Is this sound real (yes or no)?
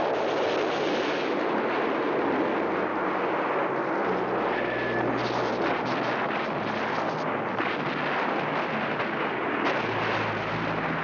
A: yes